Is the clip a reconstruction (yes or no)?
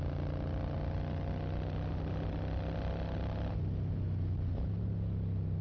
no